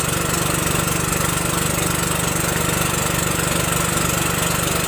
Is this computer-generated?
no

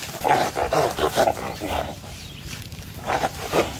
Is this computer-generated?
yes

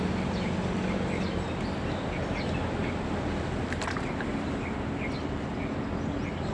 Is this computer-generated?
yes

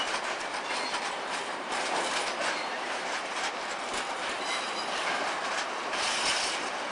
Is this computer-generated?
yes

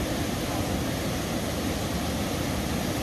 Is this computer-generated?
no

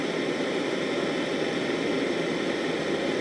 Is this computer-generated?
no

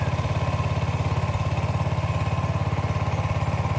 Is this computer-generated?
no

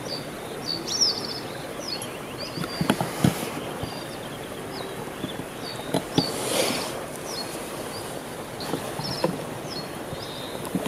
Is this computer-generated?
no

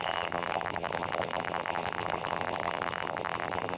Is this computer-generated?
yes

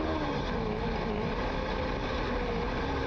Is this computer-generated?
no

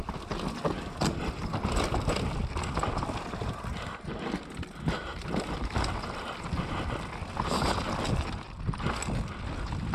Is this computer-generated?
no